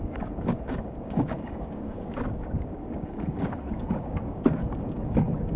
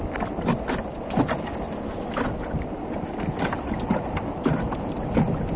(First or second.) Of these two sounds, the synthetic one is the first